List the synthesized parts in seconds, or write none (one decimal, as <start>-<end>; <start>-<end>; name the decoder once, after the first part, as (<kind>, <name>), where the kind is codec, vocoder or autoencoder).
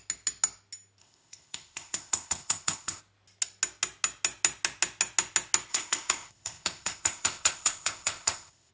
1.0-3.0 (codec, ZipCodec); 5.7-8.7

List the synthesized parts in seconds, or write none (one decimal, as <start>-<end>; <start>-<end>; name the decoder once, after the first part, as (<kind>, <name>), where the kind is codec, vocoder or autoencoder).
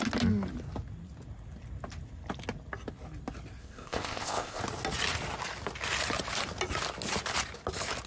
3.6-4.6 (codec, ZipCodec)